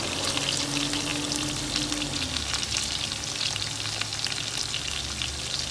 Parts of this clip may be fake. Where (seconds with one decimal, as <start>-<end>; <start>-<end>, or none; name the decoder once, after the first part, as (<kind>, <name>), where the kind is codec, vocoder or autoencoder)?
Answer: none